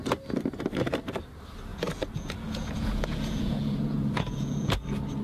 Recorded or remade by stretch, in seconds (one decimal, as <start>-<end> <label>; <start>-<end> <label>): 0.0-1.7 recorded; 1.7-4.8 remade; 4.8-5.2 recorded